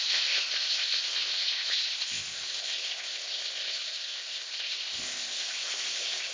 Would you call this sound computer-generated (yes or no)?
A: yes